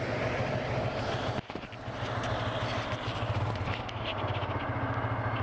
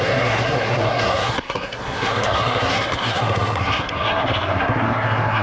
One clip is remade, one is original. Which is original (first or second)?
first